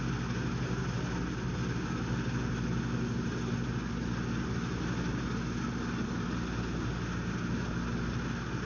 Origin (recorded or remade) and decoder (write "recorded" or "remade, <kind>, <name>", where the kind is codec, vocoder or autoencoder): recorded